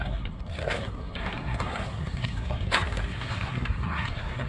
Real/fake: fake